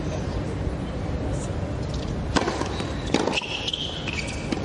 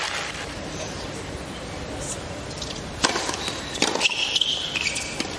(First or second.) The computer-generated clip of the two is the second